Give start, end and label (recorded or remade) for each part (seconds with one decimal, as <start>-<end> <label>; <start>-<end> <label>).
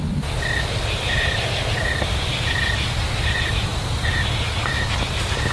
0.0-5.5 recorded